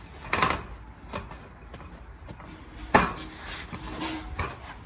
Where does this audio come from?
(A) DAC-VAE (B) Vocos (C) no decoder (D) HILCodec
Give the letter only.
C